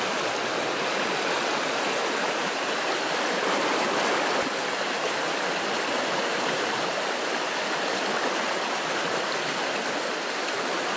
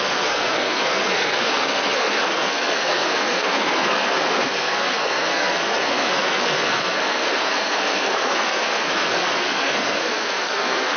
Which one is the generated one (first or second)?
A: second